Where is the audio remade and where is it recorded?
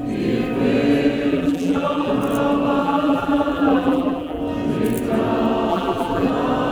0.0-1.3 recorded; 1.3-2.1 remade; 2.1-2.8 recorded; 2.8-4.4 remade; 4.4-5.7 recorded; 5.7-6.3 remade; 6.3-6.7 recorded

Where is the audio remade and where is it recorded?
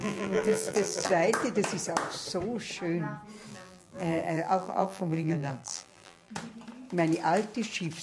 0.0-1.1 remade; 1.1-3.5 recorded; 3.5-6.3 remade; 6.3-8.0 recorded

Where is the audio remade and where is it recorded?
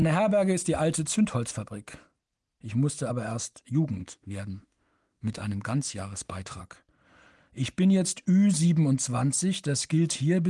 0.0-4.0 recorded; 4.0-6.6 remade; 6.6-10.5 recorded